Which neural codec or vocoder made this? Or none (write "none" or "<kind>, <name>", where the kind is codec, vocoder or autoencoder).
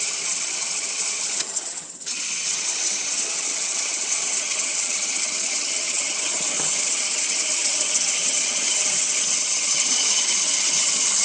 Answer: vocoder, HiFi-GAN